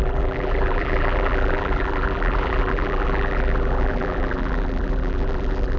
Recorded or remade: remade